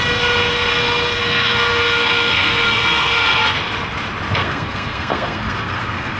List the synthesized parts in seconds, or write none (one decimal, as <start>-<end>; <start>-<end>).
0.7-3.4; 4.4-6.2